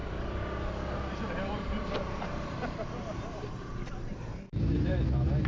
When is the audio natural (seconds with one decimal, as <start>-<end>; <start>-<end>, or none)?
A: 0.0-1.3; 3.7-4.7